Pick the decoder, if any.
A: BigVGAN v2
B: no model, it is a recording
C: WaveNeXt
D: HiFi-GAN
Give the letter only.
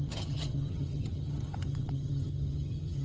D